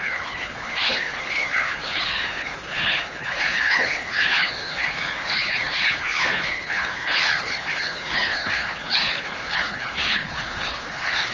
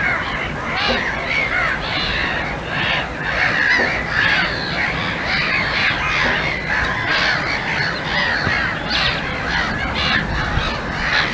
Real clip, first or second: second